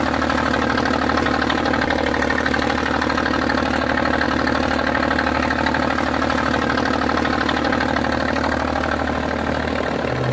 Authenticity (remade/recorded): recorded